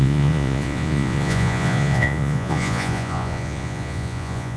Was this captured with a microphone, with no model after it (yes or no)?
no